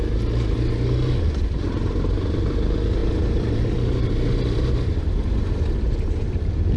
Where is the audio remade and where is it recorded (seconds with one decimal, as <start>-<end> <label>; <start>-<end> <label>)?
0.0-3.0 recorded; 3.0-5.0 remade; 5.0-6.8 recorded